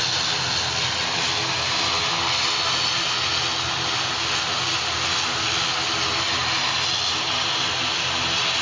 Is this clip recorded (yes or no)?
yes